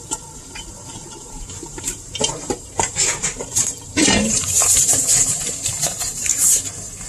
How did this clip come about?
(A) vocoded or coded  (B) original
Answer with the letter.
A